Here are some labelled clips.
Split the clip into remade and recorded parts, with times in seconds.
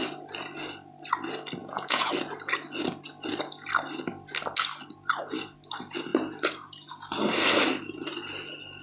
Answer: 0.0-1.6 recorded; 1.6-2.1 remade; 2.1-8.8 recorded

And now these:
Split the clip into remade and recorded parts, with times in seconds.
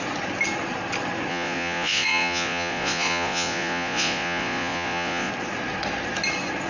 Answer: 0.0-1.3 recorded; 1.3-5.3 remade; 5.3-6.7 recorded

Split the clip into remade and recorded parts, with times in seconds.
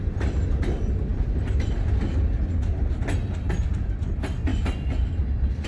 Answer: 0.0-5.7 recorded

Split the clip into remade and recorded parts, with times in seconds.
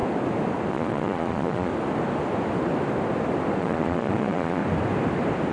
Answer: 0.0-0.7 recorded; 0.7-1.7 remade; 1.7-3.6 recorded; 3.6-4.6 remade; 4.6-5.5 recorded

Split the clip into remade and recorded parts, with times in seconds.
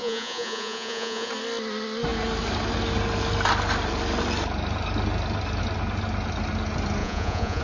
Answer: 0.0-1.3 remade; 1.3-7.0 recorded; 7.0-7.6 remade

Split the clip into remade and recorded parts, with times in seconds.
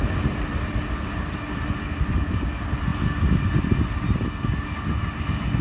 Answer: 0.0-5.6 recorded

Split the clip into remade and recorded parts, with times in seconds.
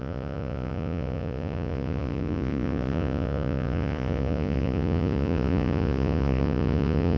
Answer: 0.0-7.2 remade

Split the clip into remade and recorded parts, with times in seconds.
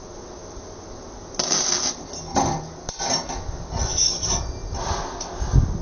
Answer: 0.0-3.9 recorded; 3.9-4.5 remade; 4.5-5.8 recorded